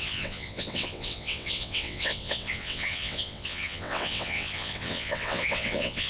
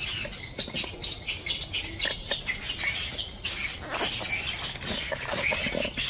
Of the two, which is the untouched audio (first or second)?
second